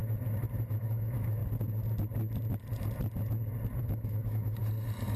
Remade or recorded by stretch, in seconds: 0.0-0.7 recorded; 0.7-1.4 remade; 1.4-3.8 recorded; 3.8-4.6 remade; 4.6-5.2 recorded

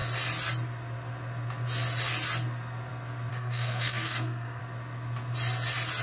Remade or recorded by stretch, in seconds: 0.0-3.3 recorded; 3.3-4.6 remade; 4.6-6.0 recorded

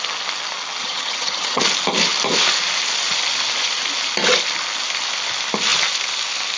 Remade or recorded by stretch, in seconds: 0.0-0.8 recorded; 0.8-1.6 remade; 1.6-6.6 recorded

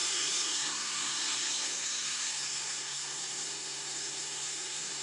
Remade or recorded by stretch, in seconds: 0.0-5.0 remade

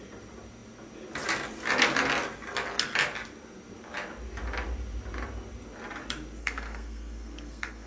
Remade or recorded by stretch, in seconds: 0.0-6.4 recorded; 6.4-7.9 remade

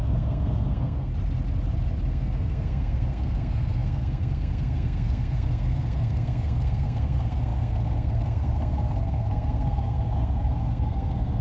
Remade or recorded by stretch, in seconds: 0.0-1.1 remade; 1.1-2.1 recorded; 2.1-11.4 remade

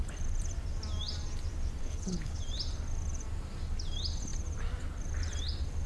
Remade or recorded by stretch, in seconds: 0.0-1.8 recorded; 1.8-2.4 remade; 2.4-5.9 recorded